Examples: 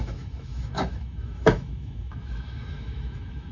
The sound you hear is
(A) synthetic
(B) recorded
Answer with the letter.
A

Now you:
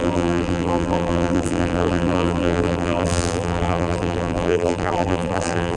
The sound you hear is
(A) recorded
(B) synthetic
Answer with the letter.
B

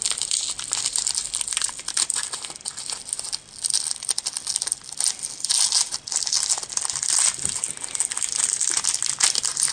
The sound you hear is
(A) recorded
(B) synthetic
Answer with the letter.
A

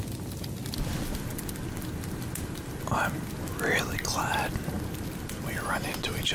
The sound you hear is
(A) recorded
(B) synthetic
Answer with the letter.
A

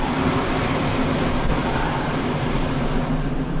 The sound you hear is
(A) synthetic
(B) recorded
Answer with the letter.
A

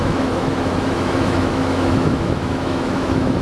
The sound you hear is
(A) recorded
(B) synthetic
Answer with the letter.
B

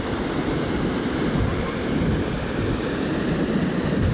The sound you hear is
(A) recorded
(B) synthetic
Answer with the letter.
A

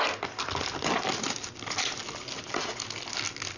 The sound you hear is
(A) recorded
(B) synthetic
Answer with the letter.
A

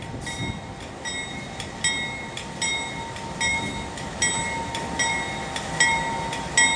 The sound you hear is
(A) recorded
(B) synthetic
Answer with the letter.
A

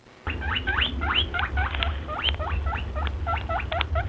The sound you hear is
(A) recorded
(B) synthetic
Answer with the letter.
A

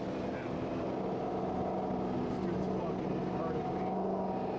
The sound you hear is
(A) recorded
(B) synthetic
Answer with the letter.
A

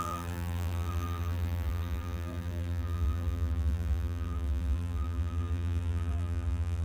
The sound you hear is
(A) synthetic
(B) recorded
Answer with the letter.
A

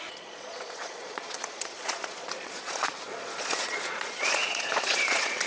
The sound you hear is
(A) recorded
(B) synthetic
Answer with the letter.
B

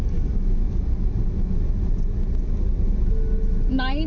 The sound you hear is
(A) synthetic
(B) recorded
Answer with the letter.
B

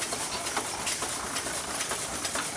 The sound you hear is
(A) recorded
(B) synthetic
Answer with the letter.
A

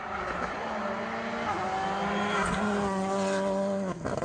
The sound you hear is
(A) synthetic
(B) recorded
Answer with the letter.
B